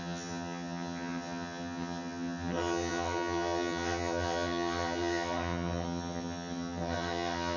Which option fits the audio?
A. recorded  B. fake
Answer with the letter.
B